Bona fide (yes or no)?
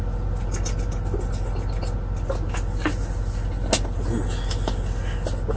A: yes